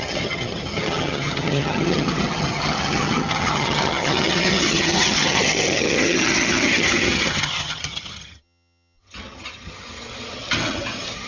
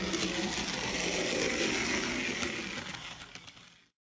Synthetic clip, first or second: first